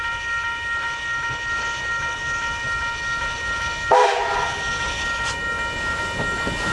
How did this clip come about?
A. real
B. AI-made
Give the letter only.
A